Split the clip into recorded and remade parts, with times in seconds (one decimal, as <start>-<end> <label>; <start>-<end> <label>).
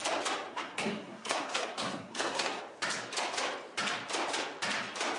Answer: 0.0-0.5 recorded; 0.5-2.6 remade; 2.6-5.2 recorded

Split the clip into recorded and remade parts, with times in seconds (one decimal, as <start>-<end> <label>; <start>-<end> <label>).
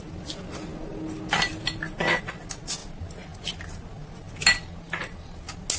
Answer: 0.0-5.8 recorded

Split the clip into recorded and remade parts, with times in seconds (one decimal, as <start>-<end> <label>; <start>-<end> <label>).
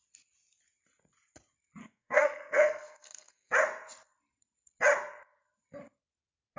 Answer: 0.0-1.8 recorded; 1.8-3.5 remade; 3.5-6.6 recorded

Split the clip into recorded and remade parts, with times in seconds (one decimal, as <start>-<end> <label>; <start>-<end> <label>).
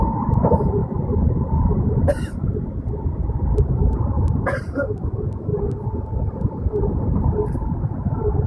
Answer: 0.0-8.5 recorded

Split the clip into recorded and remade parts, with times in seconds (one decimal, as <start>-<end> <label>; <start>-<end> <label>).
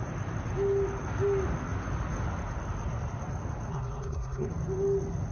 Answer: 0.0-3.7 recorded; 3.7-4.5 remade; 4.5-5.3 recorded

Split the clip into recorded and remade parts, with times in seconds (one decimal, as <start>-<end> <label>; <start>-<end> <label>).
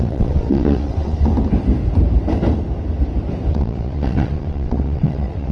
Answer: 0.0-1.3 remade; 1.3-3.5 recorded; 3.5-5.5 remade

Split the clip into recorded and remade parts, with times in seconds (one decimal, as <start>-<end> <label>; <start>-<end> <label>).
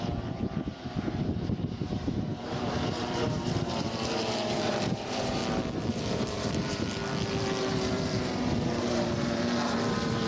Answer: 0.0-5.4 remade; 5.4-5.9 recorded; 5.9-7.0 remade; 7.0-7.6 recorded; 7.6-10.3 remade